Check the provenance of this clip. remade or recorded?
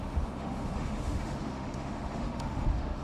remade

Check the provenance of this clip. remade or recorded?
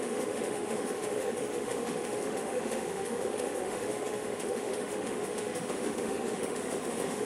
remade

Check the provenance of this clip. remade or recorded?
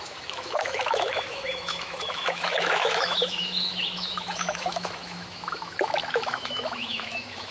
remade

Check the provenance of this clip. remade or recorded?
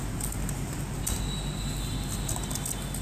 recorded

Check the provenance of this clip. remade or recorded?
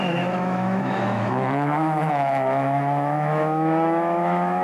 remade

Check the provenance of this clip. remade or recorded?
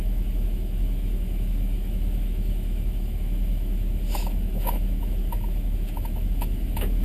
remade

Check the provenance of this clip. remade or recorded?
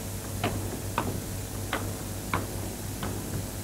recorded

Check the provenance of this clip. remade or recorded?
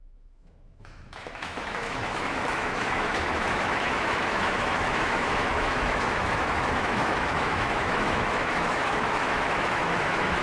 remade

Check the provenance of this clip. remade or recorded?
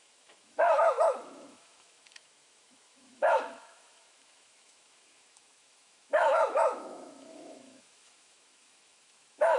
remade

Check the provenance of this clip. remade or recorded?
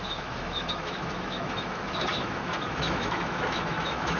remade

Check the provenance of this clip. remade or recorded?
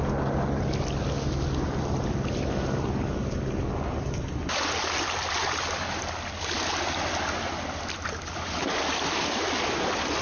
recorded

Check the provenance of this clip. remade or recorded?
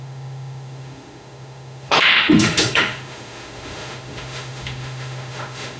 remade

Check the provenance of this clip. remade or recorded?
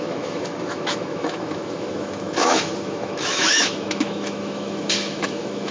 remade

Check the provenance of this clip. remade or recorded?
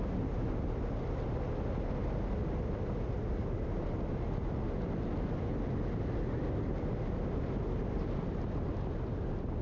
recorded